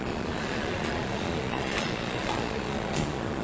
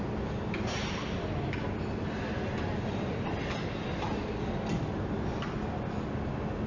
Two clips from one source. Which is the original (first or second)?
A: second